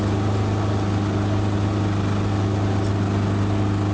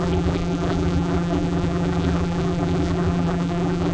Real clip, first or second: first